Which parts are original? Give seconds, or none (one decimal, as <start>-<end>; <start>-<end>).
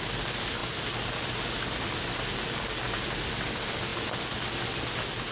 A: 0.0-5.3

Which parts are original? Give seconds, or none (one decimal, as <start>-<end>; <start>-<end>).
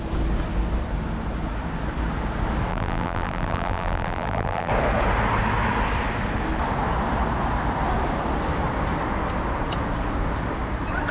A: 0.0-2.7; 4.7-11.1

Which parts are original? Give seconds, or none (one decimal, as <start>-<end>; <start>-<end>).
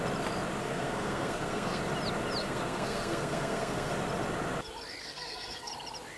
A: 0.0-0.6; 1.8-2.4; 3.9-5.0; 5.7-6.2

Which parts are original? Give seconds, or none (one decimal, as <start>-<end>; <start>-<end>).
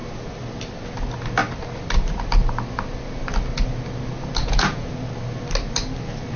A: 0.0-4.4; 4.9-6.4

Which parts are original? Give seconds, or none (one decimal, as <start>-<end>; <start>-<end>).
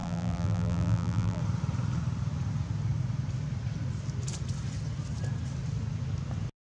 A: 1.4-6.7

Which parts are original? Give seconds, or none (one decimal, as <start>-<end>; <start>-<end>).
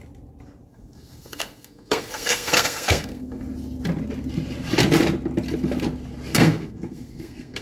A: 0.0-0.7; 3.4-6.3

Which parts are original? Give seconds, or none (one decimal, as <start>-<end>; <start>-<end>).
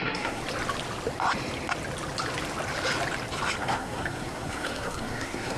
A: 0.4-3.6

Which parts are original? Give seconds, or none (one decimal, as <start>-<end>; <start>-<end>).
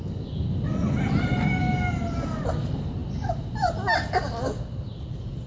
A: 0.0-5.5